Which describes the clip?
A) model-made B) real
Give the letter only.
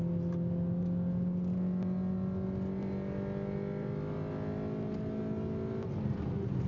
B